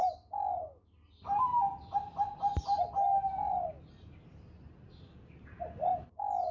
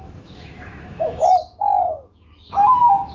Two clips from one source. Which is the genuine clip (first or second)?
first